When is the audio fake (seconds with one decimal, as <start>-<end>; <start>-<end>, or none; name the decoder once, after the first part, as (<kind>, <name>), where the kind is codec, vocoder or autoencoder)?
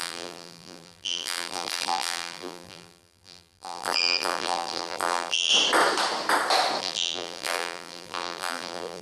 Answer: 0.0-5.5 (vocoder, BigVGAN v2); 6.8-9.0